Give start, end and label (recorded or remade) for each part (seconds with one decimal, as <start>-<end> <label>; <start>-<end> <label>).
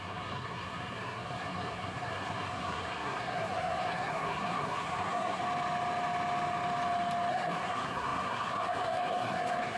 0.0-5.4 remade; 5.4-7.3 recorded; 7.3-9.8 remade